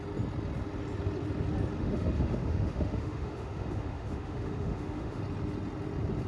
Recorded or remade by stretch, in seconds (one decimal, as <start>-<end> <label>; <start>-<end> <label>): 0.0-1.8 recorded; 1.8-5.2 remade; 5.2-6.3 recorded